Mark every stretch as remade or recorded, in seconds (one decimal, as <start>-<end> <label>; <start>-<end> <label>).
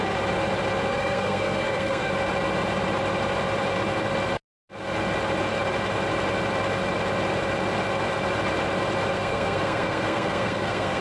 0.0-0.9 recorded; 0.9-2.1 remade; 2.1-9.1 recorded; 9.1-11.0 remade